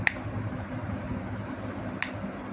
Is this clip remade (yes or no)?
no